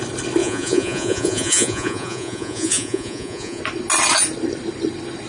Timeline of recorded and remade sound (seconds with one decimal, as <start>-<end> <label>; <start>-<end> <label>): 0.0-0.4 recorded; 0.4-3.6 remade; 3.6-5.3 recorded